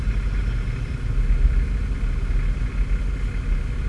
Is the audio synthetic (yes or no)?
no